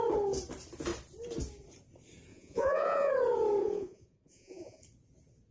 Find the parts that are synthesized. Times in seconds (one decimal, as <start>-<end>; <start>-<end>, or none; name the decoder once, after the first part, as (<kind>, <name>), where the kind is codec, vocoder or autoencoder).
2.3-3.1 (vocoder, Vocos); 3.6-4.8